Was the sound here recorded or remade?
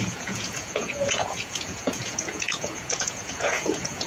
remade